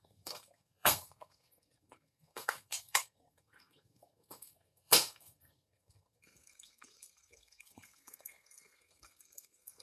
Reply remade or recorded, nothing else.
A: remade